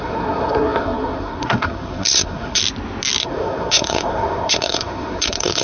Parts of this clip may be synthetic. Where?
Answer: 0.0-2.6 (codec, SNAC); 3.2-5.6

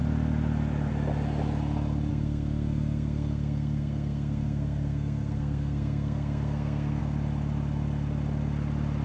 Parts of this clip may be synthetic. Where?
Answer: 2.1-7.0 (codec, SNAC)

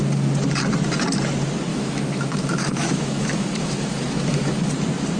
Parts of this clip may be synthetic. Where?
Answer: 1.7-4.7 (autoencoder, DAC-VAE)